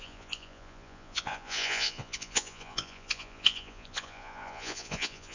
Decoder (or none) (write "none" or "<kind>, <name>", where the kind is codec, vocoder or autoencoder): vocoder, Vocos